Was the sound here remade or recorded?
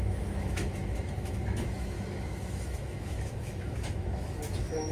remade